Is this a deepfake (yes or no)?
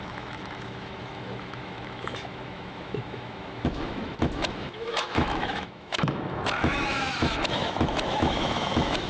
yes